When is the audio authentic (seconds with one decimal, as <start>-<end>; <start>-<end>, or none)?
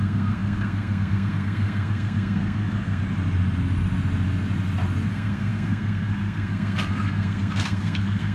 3.0-5.1